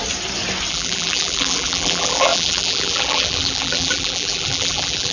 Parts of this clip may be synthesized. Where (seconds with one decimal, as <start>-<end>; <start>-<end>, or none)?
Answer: 0.7-5.1